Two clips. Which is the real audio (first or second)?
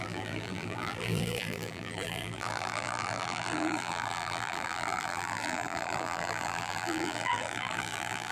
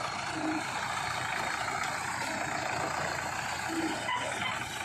second